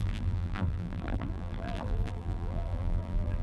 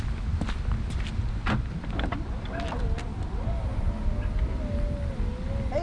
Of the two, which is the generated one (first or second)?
first